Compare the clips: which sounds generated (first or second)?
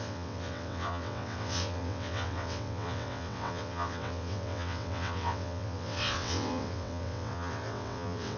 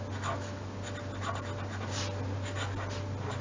first